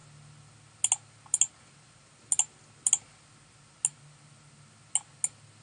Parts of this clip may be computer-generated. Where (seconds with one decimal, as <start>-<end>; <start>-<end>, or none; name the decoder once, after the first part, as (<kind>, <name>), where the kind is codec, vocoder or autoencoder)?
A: none